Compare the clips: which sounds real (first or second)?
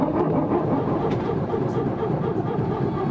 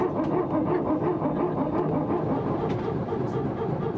second